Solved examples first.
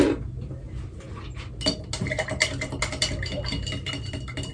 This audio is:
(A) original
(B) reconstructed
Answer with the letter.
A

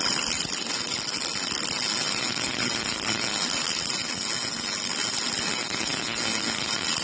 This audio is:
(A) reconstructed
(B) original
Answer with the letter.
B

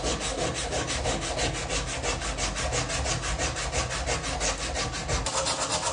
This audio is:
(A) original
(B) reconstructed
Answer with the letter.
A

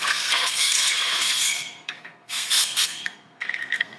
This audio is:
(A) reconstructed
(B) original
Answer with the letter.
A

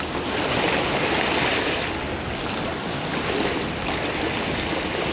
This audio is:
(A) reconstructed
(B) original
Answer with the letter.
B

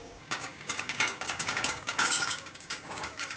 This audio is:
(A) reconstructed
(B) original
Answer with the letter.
A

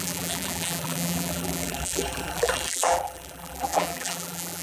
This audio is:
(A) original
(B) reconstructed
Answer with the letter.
B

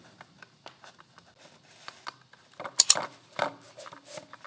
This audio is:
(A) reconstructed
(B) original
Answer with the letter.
B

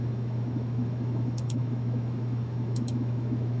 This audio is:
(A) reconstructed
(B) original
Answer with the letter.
A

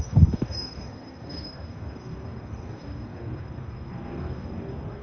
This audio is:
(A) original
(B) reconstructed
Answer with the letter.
B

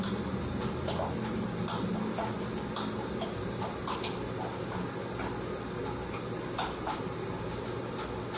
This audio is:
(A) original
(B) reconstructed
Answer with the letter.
A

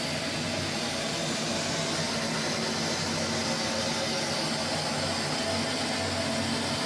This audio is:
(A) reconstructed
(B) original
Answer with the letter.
B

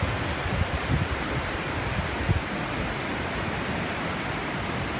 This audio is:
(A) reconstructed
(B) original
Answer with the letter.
B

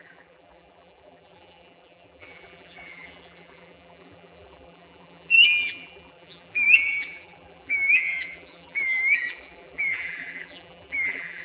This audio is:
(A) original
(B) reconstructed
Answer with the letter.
B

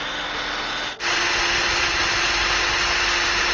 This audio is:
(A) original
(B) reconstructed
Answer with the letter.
A